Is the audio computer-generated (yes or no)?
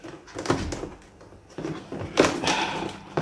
no